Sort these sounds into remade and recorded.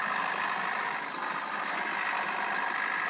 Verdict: recorded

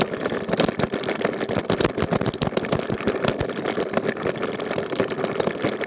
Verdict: recorded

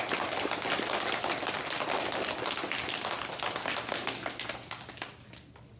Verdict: recorded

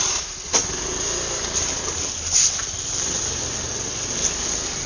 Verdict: recorded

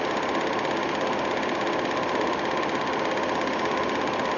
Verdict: recorded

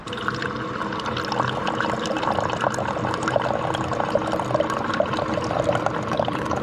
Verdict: recorded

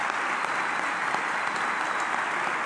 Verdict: recorded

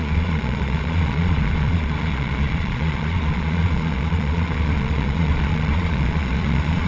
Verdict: remade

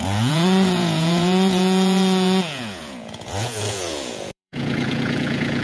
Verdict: remade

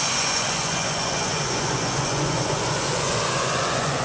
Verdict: remade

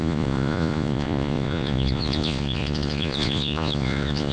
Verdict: remade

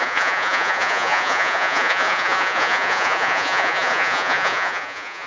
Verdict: remade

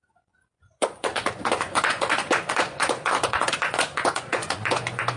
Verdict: remade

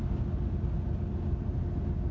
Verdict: recorded